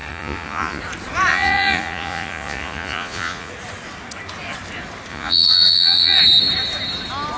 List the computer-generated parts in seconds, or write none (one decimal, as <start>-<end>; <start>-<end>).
0.0-0.8; 1.3-3.5; 5.1-6.2